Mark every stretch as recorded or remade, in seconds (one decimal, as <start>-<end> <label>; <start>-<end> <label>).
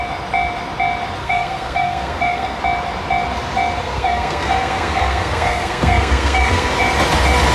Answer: 0.0-1.2 recorded; 1.2-2.6 remade; 2.6-3.8 recorded; 3.8-6.7 remade; 6.7-7.5 recorded